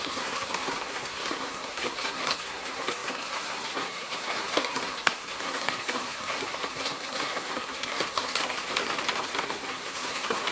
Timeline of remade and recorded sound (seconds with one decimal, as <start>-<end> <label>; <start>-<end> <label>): 0.0-8.7 remade; 8.7-9.2 recorded; 9.2-10.5 remade